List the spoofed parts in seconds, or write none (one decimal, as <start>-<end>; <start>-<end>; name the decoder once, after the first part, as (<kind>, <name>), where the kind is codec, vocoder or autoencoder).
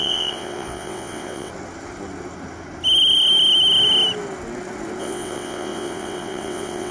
0.0-1.5 (vocoder, WaveNeXt); 5.0-6.9